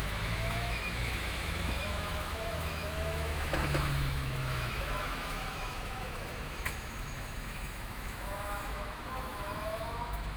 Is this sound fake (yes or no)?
yes